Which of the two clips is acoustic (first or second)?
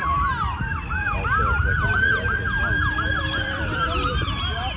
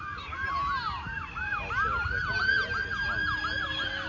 second